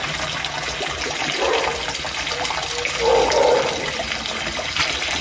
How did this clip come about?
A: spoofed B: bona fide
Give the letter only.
B